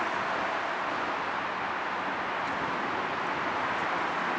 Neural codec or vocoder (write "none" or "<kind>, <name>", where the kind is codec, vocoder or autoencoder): none